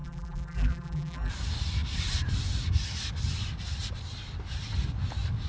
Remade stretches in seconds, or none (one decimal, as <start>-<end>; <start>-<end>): 0.0-1.3

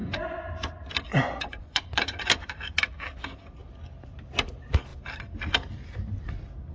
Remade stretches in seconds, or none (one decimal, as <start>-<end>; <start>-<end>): 0.0-0.5; 1.2-2.2